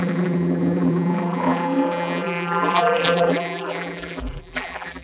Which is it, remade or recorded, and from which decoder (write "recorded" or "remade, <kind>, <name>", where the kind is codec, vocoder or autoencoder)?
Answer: remade, vocoder, BigVGAN v2